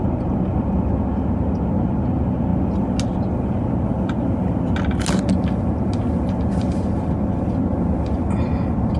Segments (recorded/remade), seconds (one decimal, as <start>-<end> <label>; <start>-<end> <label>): 0.0-9.0 recorded